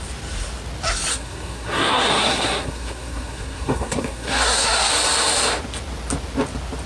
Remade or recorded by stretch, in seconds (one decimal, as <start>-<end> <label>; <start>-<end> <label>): 0.0-1.1 recorded; 1.1-4.9 remade; 4.9-6.9 recorded